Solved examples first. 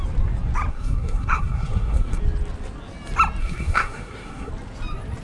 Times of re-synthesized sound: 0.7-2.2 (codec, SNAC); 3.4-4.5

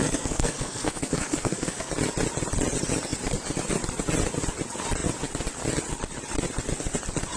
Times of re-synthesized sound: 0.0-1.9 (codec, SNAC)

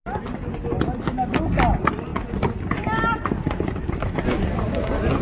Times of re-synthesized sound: none

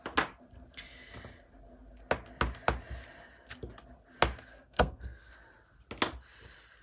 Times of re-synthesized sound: 4.5-5.3 (codec, SNAC)

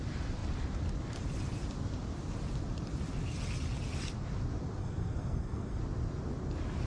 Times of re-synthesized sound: 4.8-5.8 (codec, SNAC)

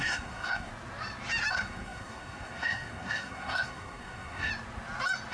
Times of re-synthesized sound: 0.0-0.7 (codec, SNAC); 1.5-4.5